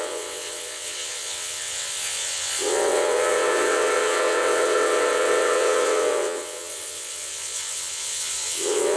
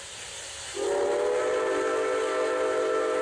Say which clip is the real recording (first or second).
second